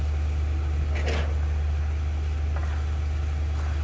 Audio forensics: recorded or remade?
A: recorded